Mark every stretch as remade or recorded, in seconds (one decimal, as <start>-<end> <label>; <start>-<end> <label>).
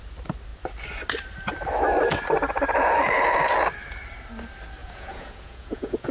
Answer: 0.0-4.8 recorded; 4.8-6.1 remade